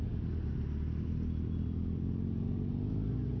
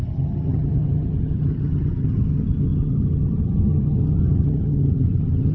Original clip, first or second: first